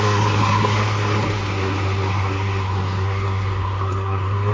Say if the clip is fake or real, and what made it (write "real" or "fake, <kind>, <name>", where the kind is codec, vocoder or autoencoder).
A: fake, codec, SNAC